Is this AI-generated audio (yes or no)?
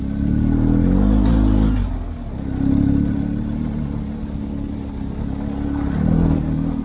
no